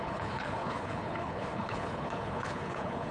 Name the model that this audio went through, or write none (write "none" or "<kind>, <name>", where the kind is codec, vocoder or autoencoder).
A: codec, HILCodec